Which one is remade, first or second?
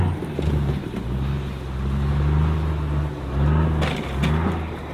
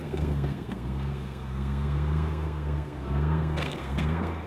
second